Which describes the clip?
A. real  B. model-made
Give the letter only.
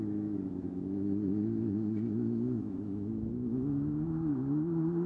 B